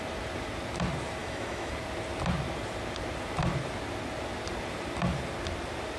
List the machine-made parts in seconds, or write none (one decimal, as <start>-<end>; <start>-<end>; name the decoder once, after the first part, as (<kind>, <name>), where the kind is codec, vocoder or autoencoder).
1.2-1.7 (autoencoder, DAC-VAE)